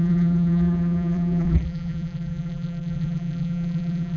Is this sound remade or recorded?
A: remade